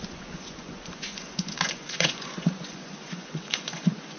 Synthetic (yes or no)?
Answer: yes